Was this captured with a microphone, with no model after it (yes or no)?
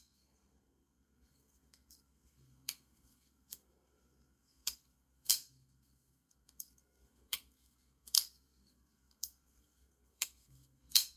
no